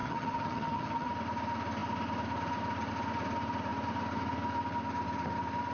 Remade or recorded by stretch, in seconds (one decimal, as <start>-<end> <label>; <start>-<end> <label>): 0.0-1.1 remade; 1.1-5.7 recorded